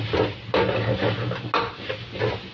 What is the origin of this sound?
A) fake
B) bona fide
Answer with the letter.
B